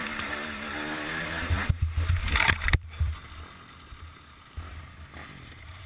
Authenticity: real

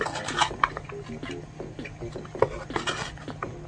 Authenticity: real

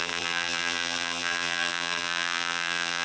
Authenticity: fake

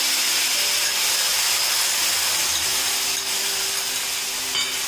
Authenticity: real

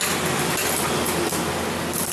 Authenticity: fake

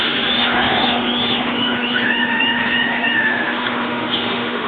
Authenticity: fake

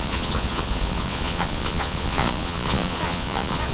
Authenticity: fake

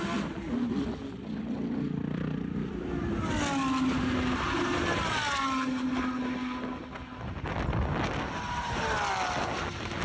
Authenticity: real